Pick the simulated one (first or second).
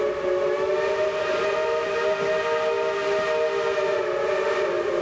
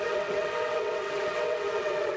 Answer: second